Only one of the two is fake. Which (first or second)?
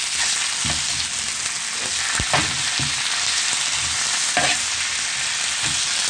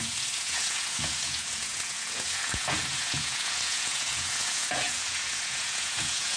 second